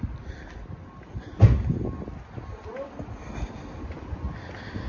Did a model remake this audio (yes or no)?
no